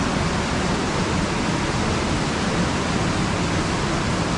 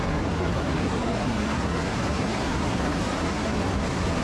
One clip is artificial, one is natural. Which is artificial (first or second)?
second